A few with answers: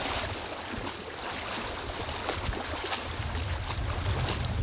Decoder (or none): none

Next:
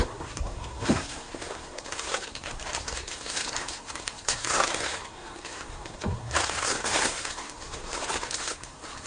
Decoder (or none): codec, SNAC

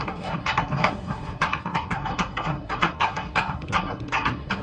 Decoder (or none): codec, SNAC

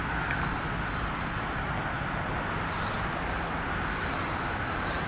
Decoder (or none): none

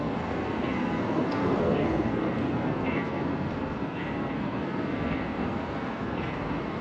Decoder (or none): codec, SNAC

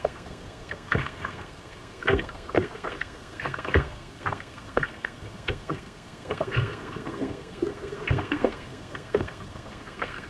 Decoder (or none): codec, SNAC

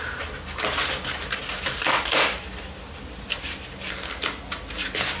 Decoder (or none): none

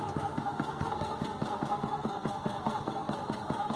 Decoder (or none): codec, SNAC